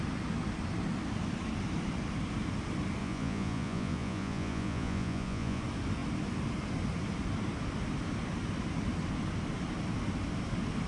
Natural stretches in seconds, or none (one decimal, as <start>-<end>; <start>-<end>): 0.0-3.0; 5.6-10.9